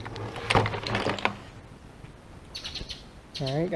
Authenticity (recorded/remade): recorded